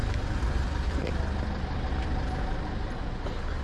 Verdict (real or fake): real